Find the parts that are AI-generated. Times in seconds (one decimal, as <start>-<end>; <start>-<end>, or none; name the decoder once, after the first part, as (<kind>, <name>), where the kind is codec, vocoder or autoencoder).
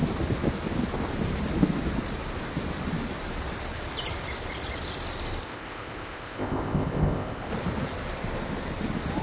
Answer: 5.4-7.5 (codec, ZipCodec)